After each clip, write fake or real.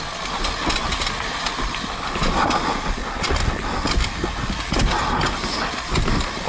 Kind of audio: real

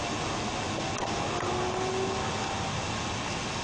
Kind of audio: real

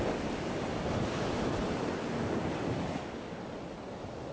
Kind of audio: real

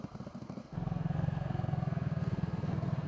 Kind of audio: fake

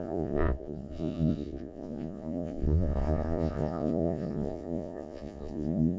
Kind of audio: fake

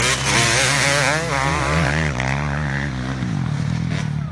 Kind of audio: real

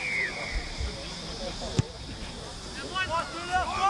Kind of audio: real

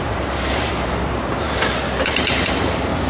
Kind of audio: fake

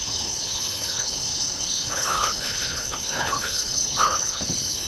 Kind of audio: fake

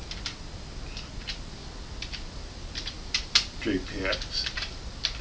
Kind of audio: real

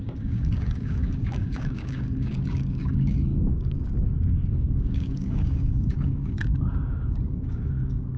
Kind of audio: fake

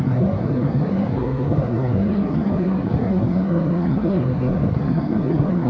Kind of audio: fake